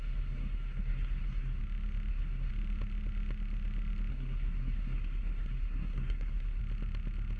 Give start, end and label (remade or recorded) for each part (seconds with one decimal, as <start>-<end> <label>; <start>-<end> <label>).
0.0-1.6 remade; 1.6-2.1 recorded; 2.1-2.5 remade; 2.5-4.1 recorded; 4.1-6.6 remade; 6.6-7.4 recorded